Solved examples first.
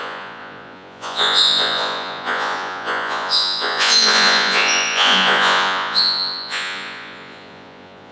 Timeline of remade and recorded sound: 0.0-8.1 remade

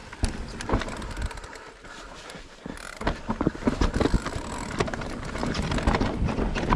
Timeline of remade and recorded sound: 0.0-6.8 recorded

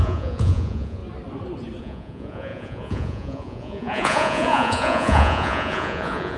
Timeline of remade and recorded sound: 0.0-1.0 remade; 1.0-1.8 recorded; 1.8-6.4 remade

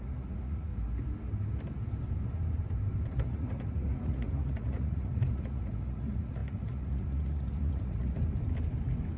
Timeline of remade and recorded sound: 0.0-0.7 remade; 0.7-3.1 recorded; 3.1-8.2 remade; 8.2-9.2 recorded

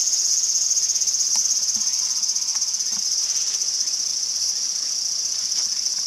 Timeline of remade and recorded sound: 0.0-0.7 remade; 0.7-6.1 recorded

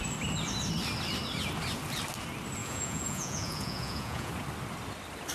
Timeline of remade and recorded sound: 0.0-2.6 recorded; 2.6-4.3 remade; 4.3-5.3 recorded

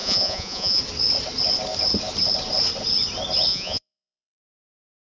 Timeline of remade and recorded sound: 0.0-0.8 remade; 0.8-3.5 recorded; 3.5-4.4 remade; 4.4-5.0 recorded

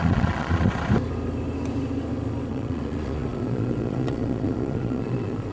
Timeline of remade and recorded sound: 0.0-0.7 remade; 0.7-2.5 recorded; 2.5-5.5 remade